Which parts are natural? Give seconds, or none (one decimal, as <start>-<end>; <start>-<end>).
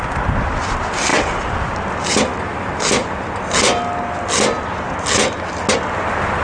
0.0-6.4